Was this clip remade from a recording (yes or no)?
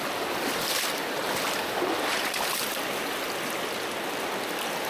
no